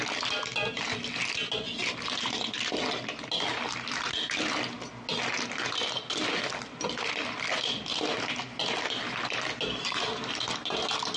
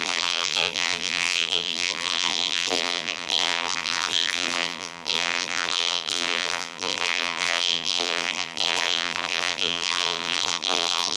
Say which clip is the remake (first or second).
second